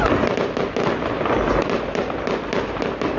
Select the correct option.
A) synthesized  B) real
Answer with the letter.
B